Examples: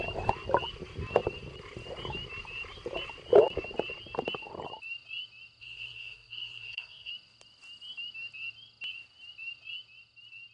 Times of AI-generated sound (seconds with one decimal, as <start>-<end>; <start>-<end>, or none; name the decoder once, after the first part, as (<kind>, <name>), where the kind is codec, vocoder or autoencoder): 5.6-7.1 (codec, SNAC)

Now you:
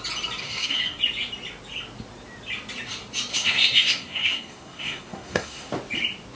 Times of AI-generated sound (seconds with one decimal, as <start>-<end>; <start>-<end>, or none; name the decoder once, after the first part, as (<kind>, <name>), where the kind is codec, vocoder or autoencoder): 0.4-1.0 (codec, SNAC); 3.3-5.7

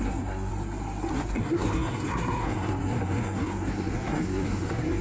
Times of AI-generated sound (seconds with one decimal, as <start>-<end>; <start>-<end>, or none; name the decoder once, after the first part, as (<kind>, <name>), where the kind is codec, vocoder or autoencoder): 0.0-0.5 (codec, SNAC); 1.1-5.0

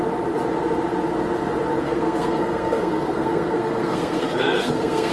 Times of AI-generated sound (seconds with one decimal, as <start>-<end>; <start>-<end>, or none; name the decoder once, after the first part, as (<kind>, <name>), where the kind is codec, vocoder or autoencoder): 1.8-5.1 (codec, SNAC)

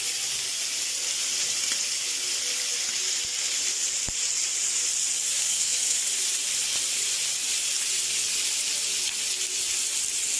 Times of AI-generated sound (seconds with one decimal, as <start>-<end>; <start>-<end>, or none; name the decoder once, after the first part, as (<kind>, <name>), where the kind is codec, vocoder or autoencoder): 5.4-6.0 (codec, SNAC)

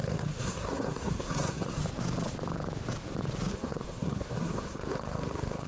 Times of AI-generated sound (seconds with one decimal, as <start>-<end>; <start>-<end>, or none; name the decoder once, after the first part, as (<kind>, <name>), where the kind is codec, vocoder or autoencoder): 0.0-1.8 (codec, SNAC); 3.5-5.7

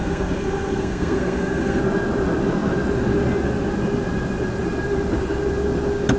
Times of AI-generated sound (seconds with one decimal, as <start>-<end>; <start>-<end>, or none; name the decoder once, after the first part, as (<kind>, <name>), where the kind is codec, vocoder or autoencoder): 0.0-1.8 (codec, SNAC)